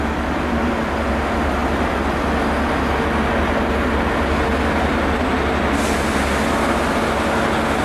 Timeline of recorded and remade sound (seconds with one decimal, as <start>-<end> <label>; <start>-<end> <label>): 0.0-7.8 recorded